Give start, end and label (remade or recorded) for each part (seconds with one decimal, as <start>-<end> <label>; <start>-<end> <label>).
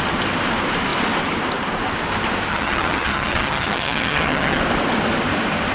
0.0-2.5 recorded; 2.5-4.6 remade; 4.6-5.7 recorded